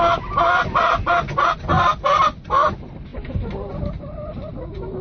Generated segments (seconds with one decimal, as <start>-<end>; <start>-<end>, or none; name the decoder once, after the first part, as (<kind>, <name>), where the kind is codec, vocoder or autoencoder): none